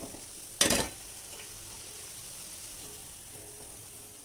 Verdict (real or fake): real